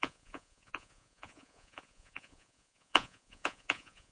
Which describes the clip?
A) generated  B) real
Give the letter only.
A